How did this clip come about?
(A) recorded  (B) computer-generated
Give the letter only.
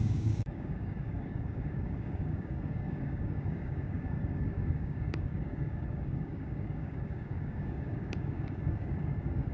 B